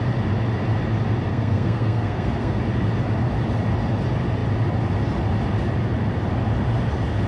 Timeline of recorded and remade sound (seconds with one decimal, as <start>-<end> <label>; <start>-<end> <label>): 0.0-1.3 recorded; 1.3-2.6 remade; 2.6-7.3 recorded